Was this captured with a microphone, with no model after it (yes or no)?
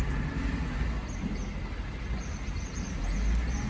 yes